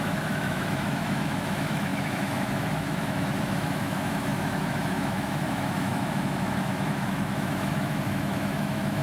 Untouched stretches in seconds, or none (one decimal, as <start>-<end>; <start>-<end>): none